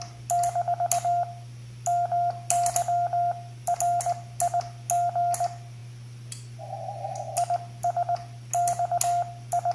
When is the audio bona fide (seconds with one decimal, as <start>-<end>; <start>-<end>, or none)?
0.0-9.7